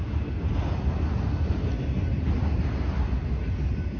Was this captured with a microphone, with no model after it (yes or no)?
yes